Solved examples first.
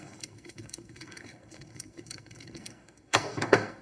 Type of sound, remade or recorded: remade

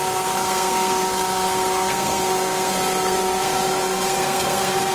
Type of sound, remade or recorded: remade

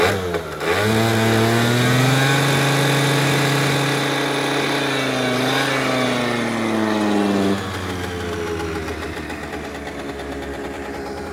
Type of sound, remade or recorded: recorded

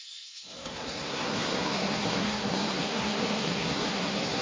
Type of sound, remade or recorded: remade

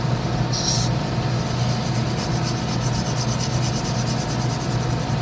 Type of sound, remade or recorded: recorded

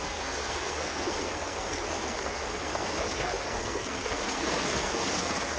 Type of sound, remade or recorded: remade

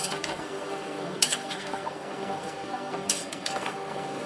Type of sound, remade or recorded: remade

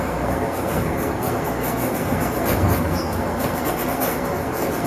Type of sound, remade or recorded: remade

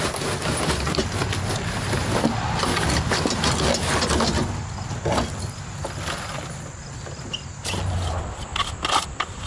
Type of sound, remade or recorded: recorded